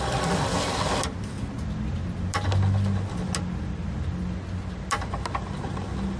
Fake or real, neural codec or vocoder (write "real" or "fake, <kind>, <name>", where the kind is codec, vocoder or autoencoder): real